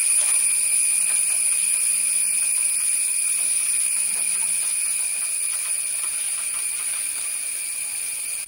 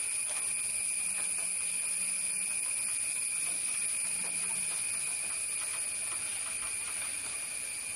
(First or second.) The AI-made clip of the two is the first